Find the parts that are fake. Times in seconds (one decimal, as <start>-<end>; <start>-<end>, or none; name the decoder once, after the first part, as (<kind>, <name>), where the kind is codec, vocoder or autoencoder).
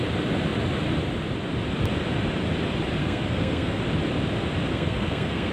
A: 3.0-3.8 (codec, SNAC); 4.7-5.5